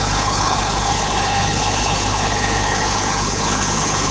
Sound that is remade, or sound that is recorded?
remade